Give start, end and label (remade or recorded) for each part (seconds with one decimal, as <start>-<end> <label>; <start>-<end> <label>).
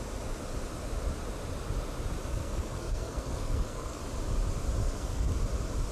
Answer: 0.0-2.3 recorded; 2.3-4.0 remade; 4.0-4.8 recorded; 4.8-5.4 remade; 5.4-5.9 recorded